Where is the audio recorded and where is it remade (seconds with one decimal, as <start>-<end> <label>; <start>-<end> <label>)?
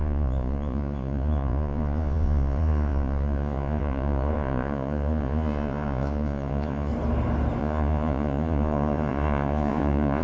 0.0-6.9 remade; 6.9-7.6 recorded; 7.6-10.2 remade